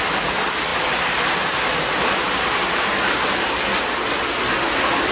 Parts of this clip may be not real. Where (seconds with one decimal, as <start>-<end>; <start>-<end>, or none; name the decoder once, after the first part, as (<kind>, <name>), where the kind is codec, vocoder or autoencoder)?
none